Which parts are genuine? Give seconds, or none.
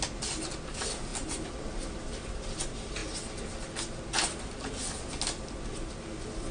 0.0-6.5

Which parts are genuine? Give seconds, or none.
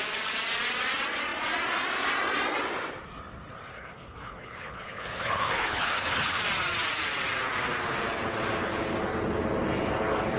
0.0-3.7; 6.4-10.4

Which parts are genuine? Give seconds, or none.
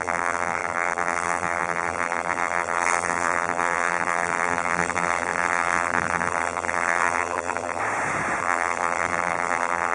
7.8-8.4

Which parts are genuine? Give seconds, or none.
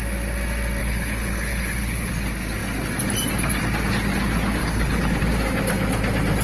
0.0-0.8; 2.1-4.6; 5.2-6.4